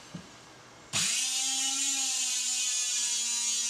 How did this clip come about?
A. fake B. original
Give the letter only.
B